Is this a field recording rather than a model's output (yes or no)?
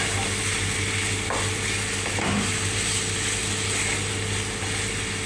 yes